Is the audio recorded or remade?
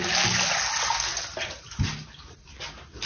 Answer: recorded